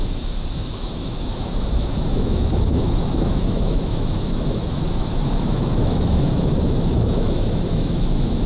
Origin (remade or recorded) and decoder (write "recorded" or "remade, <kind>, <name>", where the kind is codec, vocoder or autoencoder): remade, autoencoder, DAC-VAE